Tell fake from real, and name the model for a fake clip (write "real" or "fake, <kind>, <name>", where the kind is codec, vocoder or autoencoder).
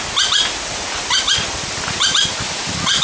real